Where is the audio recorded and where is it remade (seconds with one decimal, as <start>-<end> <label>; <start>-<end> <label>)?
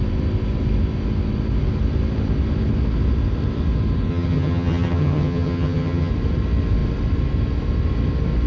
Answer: 0.0-4.1 recorded; 4.1-6.1 remade; 6.1-8.5 recorded